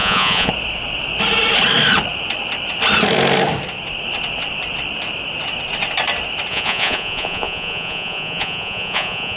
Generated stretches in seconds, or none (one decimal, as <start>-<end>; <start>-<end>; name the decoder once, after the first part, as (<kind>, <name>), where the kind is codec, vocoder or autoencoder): 0.0-0.5 (vocoder, Vocos); 6.5-9.4